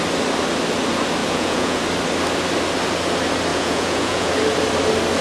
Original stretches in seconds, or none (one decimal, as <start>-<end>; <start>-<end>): 0.0-1.2; 1.8-3.5; 4.3-5.2